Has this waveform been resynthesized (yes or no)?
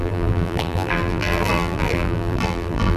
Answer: yes